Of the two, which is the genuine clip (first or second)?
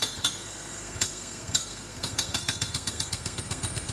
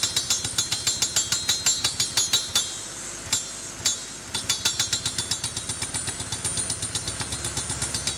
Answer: second